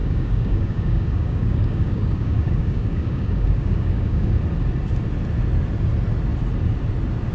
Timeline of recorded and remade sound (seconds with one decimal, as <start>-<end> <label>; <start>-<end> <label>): 0.0-4.4 remade; 4.4-7.3 recorded